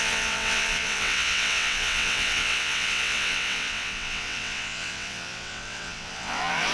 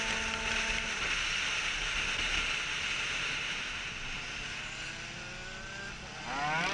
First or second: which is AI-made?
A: first